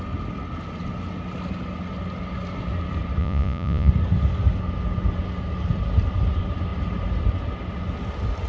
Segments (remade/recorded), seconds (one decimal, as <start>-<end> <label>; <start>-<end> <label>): 0.0-3.2 recorded; 3.2-3.9 remade; 3.9-8.5 recorded